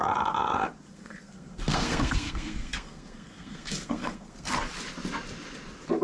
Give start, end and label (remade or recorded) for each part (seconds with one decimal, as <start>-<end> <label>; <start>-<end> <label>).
0.0-0.9 recorded; 0.9-4.5 remade; 4.5-6.0 recorded